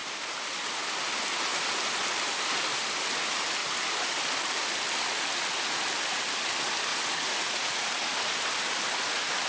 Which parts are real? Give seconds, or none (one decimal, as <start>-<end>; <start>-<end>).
0.0-1.3; 1.8-6.9; 7.9-9.5